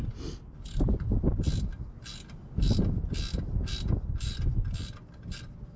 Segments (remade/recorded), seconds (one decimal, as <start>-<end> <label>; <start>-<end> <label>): 0.0-5.8 recorded

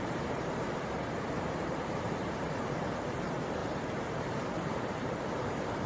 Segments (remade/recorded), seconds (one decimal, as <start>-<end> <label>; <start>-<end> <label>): 0.0-5.9 remade

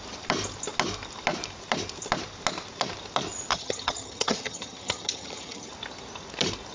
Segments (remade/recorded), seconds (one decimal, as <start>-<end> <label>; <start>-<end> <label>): 0.0-3.5 recorded; 3.5-5.7 remade; 5.7-6.7 recorded

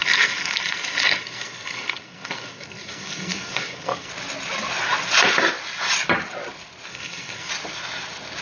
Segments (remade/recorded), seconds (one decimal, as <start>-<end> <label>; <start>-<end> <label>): 0.0-4.1 remade; 4.1-6.9 recorded; 6.9-7.5 remade; 7.5-8.4 recorded

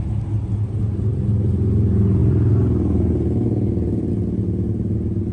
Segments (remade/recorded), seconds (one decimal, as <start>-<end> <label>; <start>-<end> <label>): 0.0-2.2 recorded; 2.2-4.1 remade; 4.1-5.3 recorded